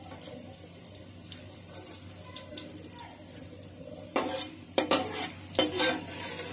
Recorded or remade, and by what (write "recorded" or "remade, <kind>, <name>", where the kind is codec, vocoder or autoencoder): remade, vocoder, BigVGAN v2